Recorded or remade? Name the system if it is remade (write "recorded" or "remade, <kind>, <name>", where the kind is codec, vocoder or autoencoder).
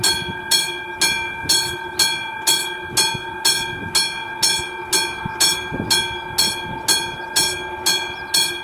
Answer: recorded